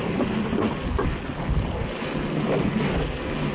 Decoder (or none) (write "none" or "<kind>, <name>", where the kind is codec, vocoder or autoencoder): none